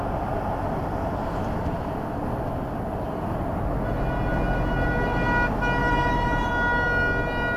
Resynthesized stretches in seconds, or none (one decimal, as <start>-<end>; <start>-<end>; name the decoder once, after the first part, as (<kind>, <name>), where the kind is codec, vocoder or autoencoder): 5.8-6.5 (vocoder, BigVGAN v2)